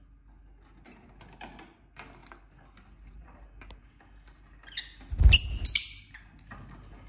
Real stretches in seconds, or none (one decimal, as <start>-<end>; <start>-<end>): 0.0-7.1